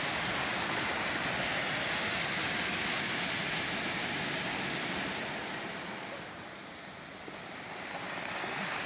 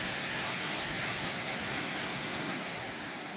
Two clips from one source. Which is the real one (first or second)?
first